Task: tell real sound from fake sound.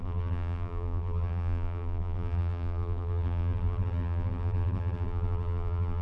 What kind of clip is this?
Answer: fake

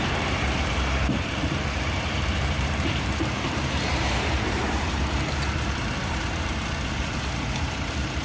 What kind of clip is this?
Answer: fake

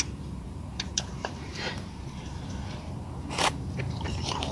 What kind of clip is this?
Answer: fake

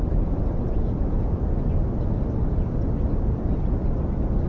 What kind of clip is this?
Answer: real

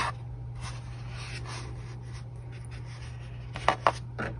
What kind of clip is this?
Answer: real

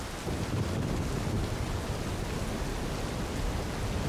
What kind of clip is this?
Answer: real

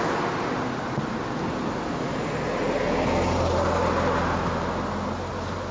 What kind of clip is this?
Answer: real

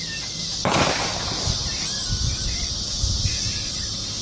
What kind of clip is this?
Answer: real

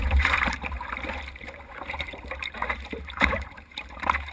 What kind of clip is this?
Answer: fake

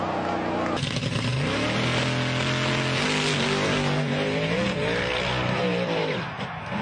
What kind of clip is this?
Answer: real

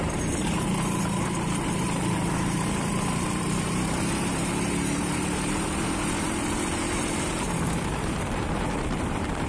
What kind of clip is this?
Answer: fake